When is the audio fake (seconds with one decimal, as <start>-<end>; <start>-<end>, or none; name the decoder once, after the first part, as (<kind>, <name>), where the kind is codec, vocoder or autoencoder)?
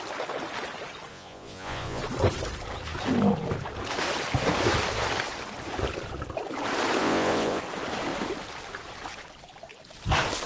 1.1-2.0 (vocoder, Vocos); 7.0-7.6